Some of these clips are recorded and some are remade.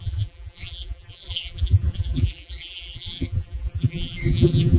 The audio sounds remade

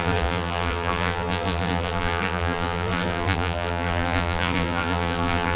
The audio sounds remade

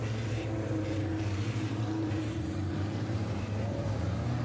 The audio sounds remade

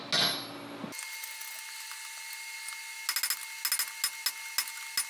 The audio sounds recorded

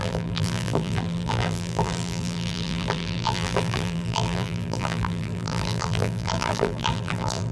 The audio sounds remade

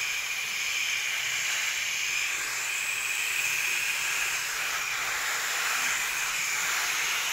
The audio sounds recorded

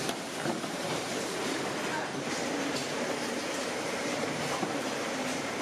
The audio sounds remade